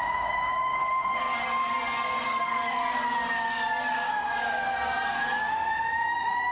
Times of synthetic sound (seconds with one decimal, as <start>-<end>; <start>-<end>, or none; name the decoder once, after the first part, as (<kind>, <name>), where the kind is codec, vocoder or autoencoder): 0.0-6.5 (codec, DAC)

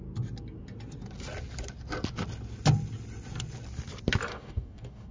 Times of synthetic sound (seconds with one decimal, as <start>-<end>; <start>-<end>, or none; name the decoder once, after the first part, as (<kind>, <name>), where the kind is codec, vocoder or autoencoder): 4.3-5.1 (codec, DAC)

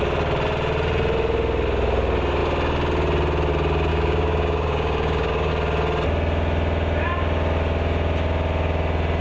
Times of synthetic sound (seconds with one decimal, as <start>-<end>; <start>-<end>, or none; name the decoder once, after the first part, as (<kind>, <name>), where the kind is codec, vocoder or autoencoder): 3.9-5.5 (codec, DAC)